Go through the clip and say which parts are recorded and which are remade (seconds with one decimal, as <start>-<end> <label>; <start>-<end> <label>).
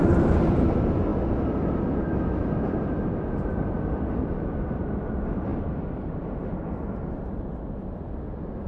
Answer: 0.0-8.7 recorded